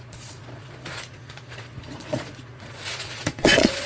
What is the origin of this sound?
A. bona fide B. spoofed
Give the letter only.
B